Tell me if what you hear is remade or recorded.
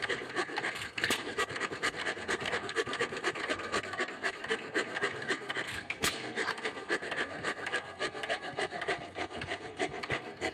remade